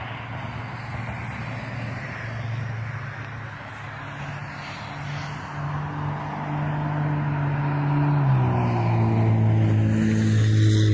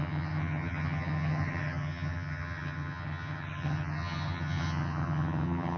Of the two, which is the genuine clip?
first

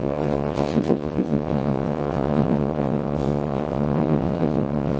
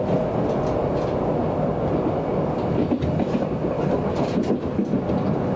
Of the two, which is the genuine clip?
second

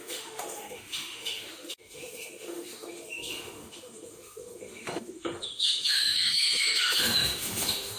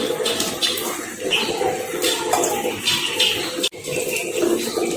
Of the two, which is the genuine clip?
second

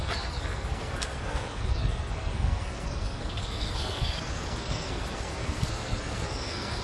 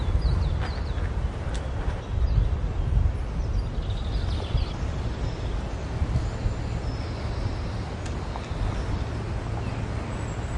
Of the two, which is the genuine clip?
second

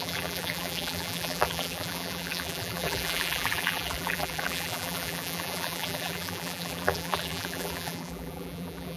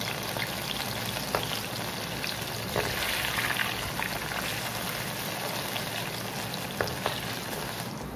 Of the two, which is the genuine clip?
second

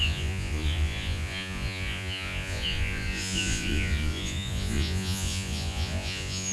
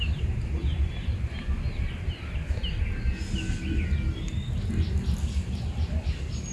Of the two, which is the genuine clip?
second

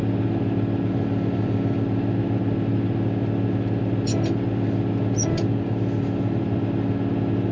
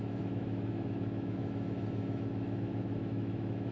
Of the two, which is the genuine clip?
first